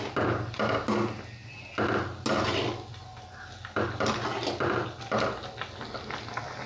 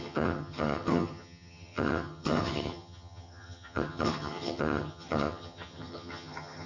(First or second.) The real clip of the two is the first